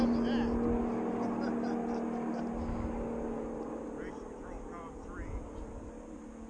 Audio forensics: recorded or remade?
recorded